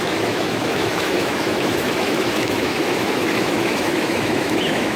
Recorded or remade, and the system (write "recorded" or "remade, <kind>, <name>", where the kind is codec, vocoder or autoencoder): remade, autoencoder, DAC-VAE